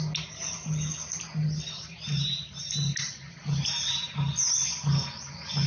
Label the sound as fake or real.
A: real